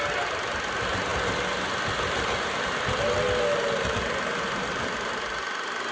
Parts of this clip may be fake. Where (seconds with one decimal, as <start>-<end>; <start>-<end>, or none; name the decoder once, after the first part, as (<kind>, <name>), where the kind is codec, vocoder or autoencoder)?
none